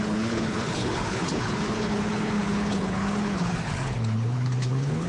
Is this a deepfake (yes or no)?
yes